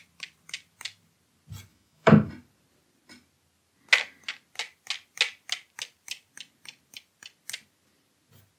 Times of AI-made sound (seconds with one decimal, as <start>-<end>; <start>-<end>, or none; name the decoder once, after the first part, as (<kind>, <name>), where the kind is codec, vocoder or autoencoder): 1.7-2.3 (autoencoder, DAC-VAE)